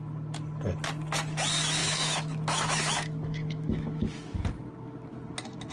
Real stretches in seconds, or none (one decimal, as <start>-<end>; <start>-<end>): 0.0-1.8; 4.4-5.7